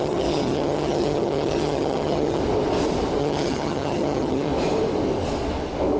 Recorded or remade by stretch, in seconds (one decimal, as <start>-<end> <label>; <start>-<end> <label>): 0.0-2.4 remade; 2.4-3.2 recorded; 3.2-4.5 remade; 4.5-6.0 recorded